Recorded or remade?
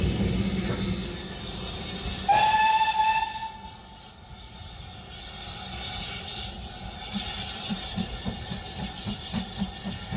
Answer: recorded